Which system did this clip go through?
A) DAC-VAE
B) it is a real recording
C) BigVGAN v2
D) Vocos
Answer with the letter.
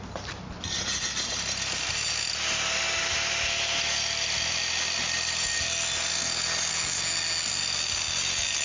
B